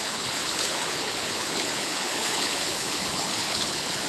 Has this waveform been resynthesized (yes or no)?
yes